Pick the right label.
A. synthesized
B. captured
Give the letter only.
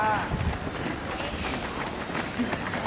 B